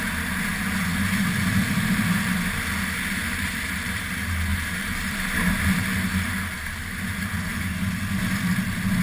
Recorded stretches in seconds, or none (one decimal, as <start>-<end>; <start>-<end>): 0.0-3.2; 4.0-4.5; 5.5-9.0